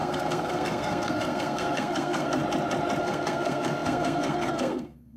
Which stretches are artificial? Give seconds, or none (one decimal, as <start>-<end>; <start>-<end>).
0.0-2.4; 3.0-5.2